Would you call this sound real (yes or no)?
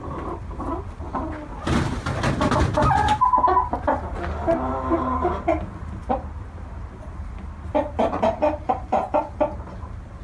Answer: yes